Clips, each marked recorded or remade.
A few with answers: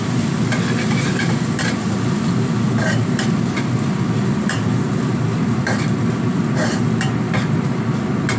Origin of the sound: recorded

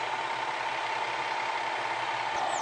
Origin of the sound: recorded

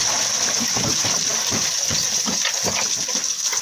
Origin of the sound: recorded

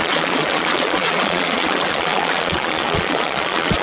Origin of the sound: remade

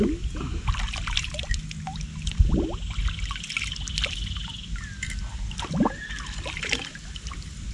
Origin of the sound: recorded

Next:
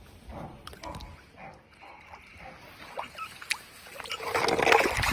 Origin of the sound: recorded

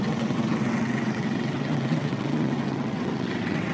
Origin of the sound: remade